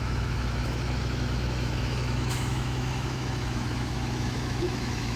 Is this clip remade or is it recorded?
remade